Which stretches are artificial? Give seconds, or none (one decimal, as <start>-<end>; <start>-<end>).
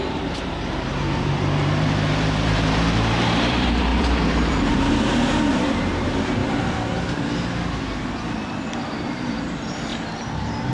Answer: 0.0-6.4; 9.0-10.7